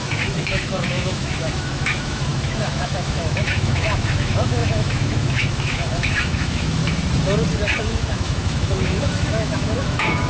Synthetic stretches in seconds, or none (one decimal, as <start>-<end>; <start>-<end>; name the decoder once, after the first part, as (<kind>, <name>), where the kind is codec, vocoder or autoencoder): 0.0-6.8 (autoencoder, DAC-VAE); 7.8-10.3

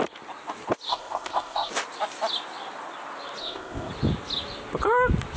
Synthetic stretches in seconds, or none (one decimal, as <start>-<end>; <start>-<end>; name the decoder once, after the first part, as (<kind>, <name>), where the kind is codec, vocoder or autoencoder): 0.9-1.7 (codec, ZipCodec); 3.4-3.9

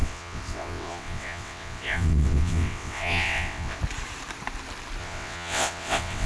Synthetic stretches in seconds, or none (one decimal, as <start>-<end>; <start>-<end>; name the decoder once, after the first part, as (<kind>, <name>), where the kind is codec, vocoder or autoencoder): 0.0-3.8 (vocoder, WaveNeXt); 5.0-6.3

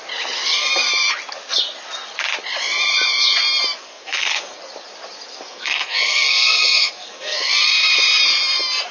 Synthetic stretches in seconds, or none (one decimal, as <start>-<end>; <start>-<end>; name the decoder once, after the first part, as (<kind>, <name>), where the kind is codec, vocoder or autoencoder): 3.8-4.6 (codec, SNAC); 5.3-7.5

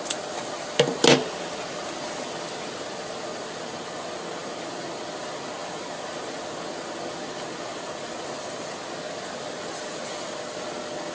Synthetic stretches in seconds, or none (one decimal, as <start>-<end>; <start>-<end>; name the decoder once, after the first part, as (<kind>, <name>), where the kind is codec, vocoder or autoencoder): none